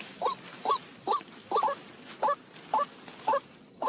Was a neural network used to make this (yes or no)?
no